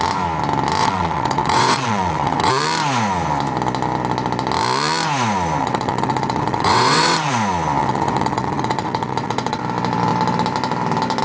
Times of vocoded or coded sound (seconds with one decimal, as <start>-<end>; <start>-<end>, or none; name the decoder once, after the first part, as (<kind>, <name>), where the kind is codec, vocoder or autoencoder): 0.8-2.5 (vocoder, WaveNeXt); 5.6-7.3; 7.8-9.6